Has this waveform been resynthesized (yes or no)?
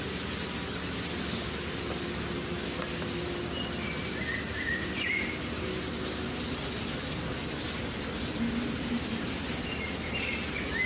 no